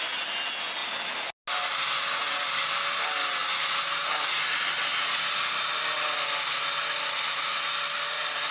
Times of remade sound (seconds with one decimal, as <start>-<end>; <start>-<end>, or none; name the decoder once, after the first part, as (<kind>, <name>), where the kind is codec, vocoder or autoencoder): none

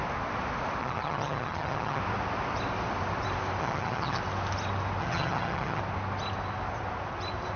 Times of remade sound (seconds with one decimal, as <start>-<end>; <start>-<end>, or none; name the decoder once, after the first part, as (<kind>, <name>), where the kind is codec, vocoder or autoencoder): 0.8-2.0 (vocoder, HiFi-GAN); 3.6-4.2; 5.0-5.8

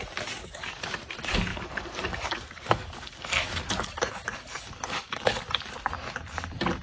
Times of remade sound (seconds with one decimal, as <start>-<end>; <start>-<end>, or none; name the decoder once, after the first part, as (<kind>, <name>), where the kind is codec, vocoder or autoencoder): 0.4-0.9 (codec, DAC); 1.5-5.4